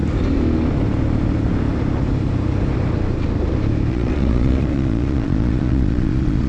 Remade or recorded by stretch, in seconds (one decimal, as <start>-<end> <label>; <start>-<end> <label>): 0.0-3.9 recorded; 3.9-6.5 remade